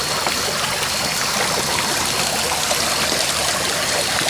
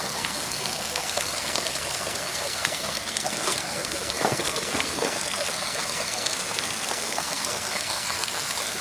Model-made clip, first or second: second